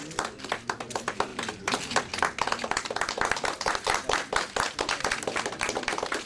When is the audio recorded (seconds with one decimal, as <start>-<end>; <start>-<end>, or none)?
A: 0.0-6.3